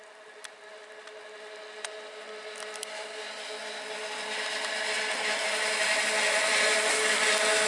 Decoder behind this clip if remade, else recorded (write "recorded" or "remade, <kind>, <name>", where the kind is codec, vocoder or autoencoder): recorded